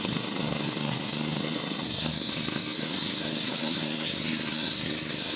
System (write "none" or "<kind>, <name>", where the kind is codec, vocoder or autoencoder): codec, SNAC